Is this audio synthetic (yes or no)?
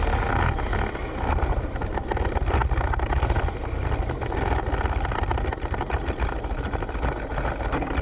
no